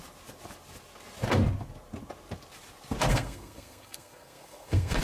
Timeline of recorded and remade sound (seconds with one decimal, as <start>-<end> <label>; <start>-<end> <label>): 0.0-3.1 recorded; 3.1-5.0 remade